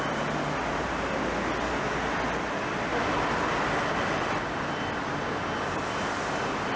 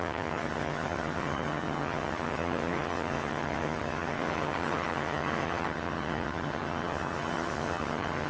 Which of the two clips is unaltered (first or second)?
first